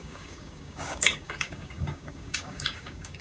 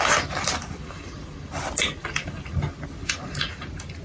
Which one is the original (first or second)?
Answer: second